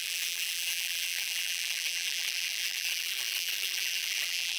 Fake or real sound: fake